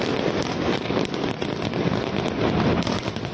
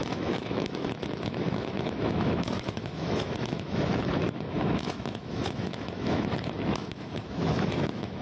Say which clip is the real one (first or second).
first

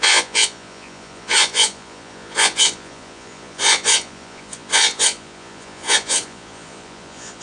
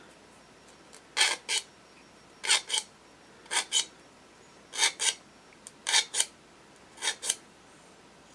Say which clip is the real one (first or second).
second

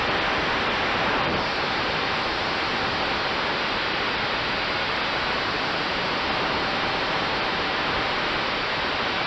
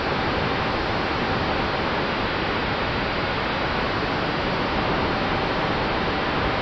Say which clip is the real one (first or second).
second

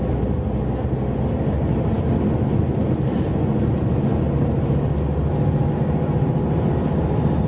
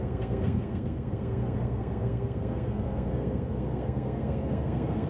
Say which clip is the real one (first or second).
first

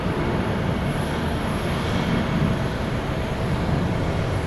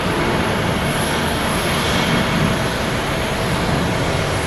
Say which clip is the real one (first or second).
second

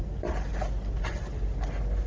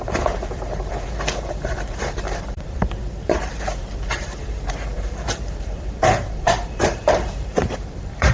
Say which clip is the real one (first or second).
first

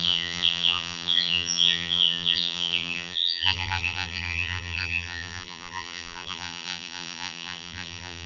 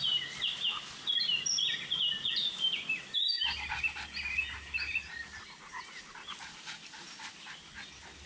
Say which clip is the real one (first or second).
second